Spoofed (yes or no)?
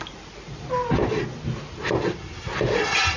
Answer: no